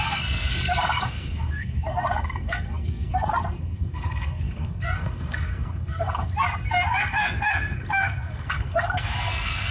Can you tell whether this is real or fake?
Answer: fake